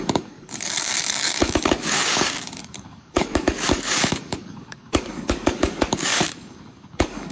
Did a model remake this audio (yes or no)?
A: yes